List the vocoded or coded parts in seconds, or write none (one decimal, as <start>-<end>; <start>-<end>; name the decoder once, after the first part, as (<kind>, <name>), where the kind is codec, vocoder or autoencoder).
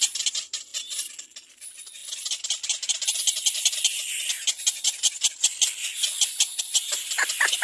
none